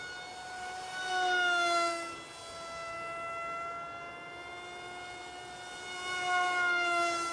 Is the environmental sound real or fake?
real